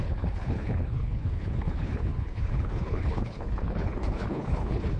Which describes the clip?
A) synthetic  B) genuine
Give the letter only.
A